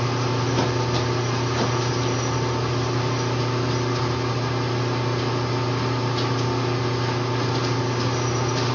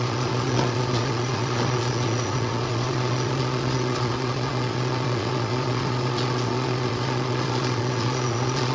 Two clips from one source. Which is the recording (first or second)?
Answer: first